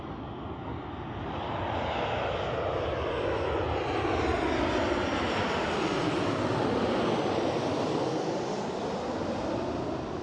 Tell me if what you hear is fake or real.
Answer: real